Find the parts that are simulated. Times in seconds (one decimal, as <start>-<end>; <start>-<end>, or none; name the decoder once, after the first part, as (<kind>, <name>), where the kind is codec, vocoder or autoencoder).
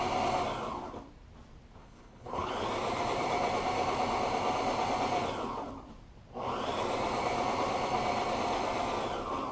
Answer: 1.8-2.5 (codec, HILCodec)